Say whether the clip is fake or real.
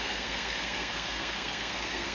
fake